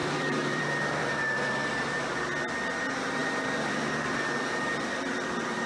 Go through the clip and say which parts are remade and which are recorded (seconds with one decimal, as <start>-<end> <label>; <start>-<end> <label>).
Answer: 0.0-2.2 remade; 2.2-3.2 recorded; 3.2-5.7 remade